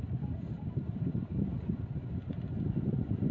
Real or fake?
real